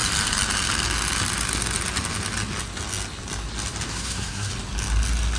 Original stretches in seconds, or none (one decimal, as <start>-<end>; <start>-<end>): 0.0-3.9; 4.5-5.4